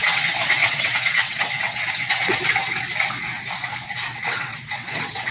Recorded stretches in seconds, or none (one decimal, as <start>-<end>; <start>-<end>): 2.8-4.1